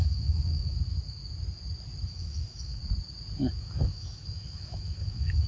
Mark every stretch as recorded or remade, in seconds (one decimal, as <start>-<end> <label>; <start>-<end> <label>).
0.0-1.2 remade; 1.2-2.1 recorded; 2.1-2.8 remade; 2.8-3.5 recorded; 3.5-5.5 remade